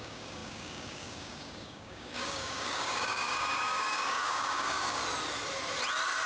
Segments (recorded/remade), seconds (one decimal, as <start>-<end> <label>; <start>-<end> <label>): 0.0-5.0 remade; 5.0-6.3 recorded